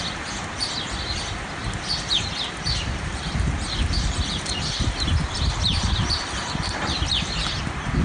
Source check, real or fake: fake